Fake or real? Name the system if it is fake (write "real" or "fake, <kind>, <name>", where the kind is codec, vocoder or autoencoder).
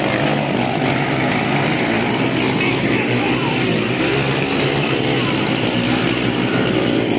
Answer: fake, vocoder, BigVGAN v2